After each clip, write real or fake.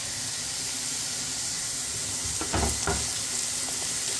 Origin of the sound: real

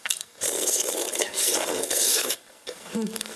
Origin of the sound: fake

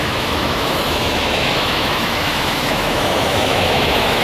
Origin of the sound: fake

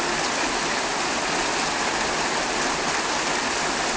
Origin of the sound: real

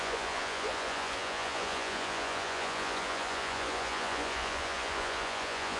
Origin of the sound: fake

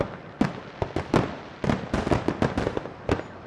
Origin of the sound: real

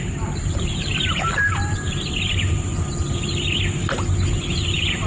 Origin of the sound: real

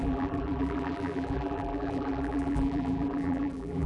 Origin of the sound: fake